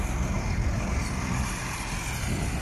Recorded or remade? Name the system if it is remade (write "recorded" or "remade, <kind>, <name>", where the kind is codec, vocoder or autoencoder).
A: remade, vocoder, BigVGAN v2